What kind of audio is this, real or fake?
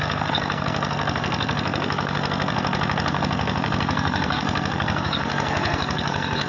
fake